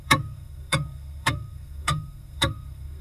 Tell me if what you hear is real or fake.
fake